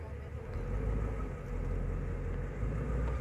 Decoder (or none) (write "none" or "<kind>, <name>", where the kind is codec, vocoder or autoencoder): none